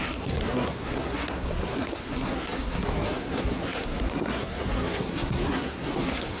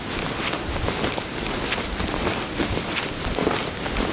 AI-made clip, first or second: first